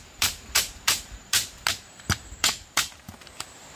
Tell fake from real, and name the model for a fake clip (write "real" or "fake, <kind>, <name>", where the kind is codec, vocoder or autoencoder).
fake, vocoder, BigVGAN v2